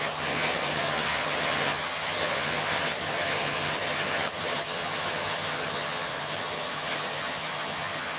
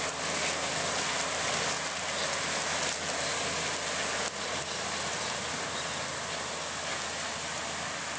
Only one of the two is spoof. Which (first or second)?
first